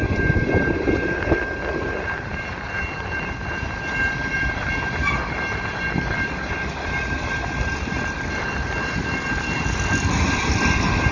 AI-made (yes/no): yes